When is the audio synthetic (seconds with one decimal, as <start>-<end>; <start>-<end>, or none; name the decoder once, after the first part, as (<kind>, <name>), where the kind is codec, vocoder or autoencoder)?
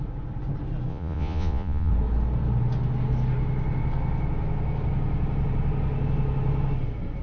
0.9-1.9 (vocoder, Vocos)